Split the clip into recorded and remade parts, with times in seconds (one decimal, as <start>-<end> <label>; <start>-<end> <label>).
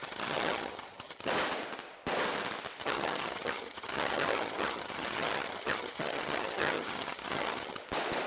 0.0-1.3 remade; 1.3-2.8 recorded; 2.8-7.8 remade; 7.8-8.3 recorded